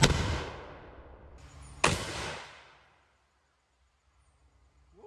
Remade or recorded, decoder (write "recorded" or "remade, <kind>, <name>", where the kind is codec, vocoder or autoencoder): recorded